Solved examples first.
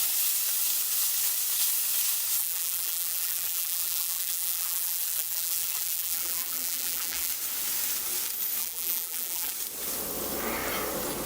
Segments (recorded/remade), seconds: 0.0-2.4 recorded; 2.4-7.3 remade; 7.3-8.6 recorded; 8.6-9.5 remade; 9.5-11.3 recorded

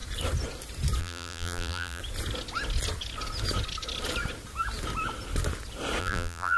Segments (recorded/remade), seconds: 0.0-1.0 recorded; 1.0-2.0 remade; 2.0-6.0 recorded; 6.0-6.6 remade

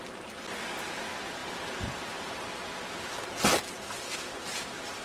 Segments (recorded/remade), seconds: 0.0-5.0 recorded

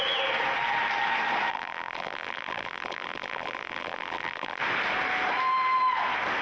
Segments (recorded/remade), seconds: 0.0-1.5 recorded; 1.5-4.6 remade; 4.6-6.4 recorded